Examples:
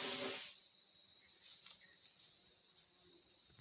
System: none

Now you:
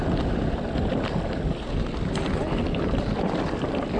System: none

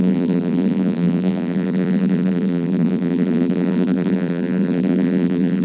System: vocoder, BigVGAN v2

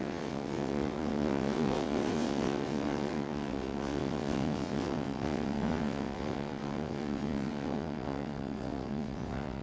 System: vocoder, WaveNeXt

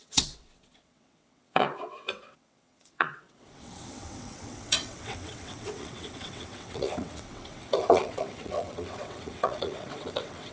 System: vocoder, WaveNeXt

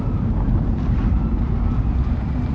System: none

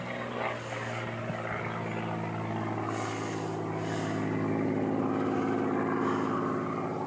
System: none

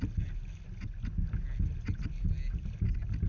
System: none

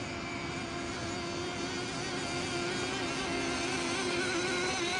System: none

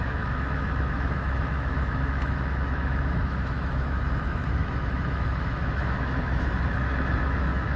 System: autoencoder, DAC-VAE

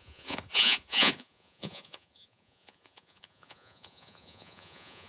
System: vocoder, Vocos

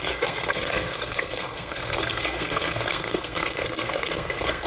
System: codec, SNAC